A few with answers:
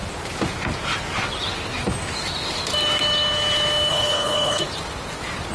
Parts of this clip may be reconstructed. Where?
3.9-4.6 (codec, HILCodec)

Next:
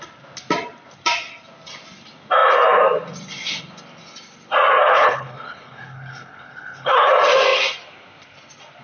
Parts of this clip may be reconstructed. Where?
4.9-7.1 (codec, HILCodec)

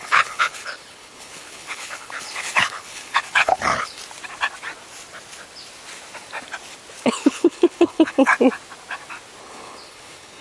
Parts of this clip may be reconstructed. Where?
0.0-4.0 (codec, HILCodec); 7.0-8.3; 9.4-10.4

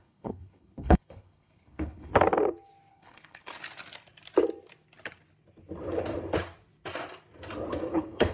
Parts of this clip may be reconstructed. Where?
0.0-2.1 (codec, HILCodec); 2.9-3.5; 7.9-8.3